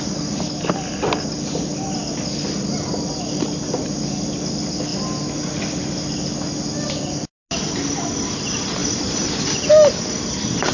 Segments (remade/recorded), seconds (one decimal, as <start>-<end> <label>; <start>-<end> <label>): 0.0-10.7 recorded